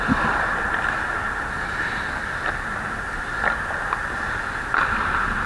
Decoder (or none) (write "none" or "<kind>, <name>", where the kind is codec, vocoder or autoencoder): none